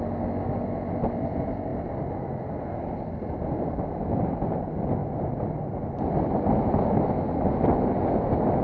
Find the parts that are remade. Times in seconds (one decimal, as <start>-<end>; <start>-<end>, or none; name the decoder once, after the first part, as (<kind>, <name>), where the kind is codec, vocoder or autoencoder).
none